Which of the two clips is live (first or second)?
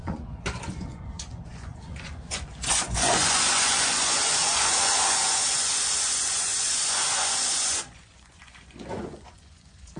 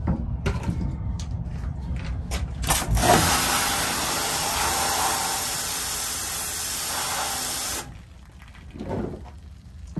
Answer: second